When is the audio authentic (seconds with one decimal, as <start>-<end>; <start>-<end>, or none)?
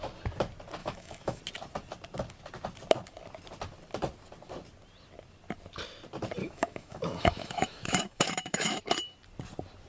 0.0-0.8; 1.4-6.4; 8.8-9.9